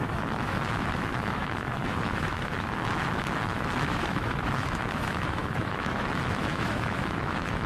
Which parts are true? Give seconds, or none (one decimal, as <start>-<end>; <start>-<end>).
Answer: none